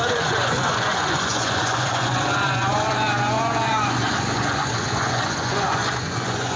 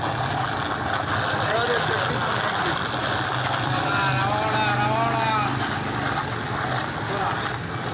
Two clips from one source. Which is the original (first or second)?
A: second